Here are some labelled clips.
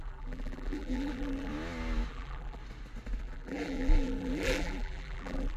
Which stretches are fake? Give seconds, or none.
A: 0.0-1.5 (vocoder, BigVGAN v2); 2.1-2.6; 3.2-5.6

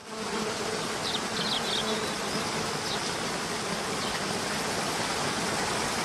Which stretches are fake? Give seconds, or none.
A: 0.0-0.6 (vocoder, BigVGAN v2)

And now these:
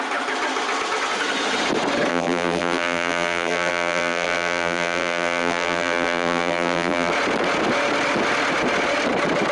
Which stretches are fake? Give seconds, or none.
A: 2.1-7.1 (vocoder, BigVGAN v2)

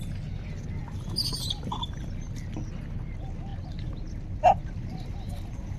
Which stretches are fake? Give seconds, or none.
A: none

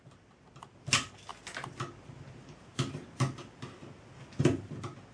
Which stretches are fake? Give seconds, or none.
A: none

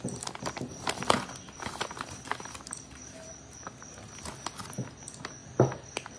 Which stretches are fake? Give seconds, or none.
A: none

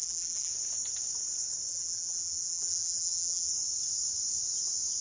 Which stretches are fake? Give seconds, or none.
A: 0.0-0.5 (vocoder, BigVGAN v2); 1.7-3.5

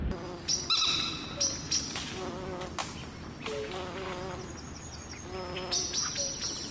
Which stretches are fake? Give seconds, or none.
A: none